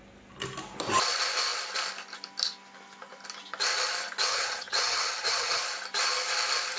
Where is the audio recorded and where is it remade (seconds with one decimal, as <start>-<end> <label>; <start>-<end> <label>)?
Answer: 0.0-4.3 recorded; 4.3-5.6 remade; 5.6-6.8 recorded